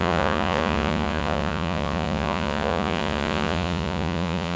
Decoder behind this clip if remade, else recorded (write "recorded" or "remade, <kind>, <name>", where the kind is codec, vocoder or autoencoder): remade, vocoder, Vocos